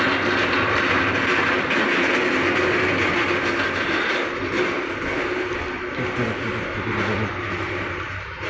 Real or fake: real